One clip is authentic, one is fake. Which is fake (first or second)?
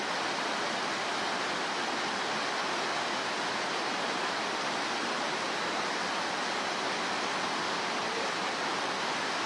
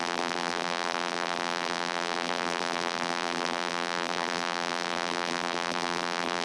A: second